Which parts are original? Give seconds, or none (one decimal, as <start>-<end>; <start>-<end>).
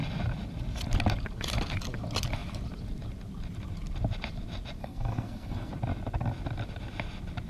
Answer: 0.0-4.8; 5.7-7.5